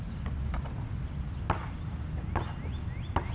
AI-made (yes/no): no